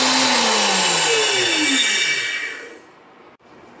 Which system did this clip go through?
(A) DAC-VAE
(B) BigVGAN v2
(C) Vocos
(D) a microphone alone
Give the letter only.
D